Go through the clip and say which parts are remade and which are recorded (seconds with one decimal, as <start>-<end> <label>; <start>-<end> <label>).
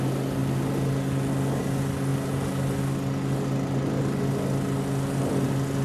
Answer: 0.0-5.8 recorded